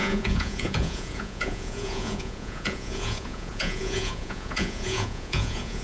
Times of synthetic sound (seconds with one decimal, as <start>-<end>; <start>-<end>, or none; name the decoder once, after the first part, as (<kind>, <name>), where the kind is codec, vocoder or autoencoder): 0.0-5.8 (vocoder, Vocos)